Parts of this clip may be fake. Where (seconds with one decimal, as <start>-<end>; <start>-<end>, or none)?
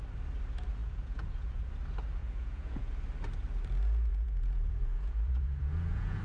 0.8-1.7; 2.2-2.9; 4.1-6.2